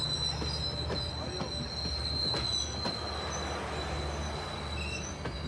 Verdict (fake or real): real